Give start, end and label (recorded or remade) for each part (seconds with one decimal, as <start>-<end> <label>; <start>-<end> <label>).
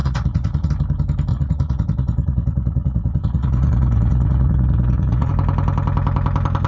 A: 0.0-0.7 remade; 0.7-1.3 recorded; 1.3-5.3 remade; 5.3-6.7 recorded